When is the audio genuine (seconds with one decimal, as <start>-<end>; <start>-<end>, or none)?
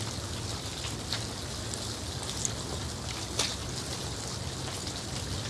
0.0-5.5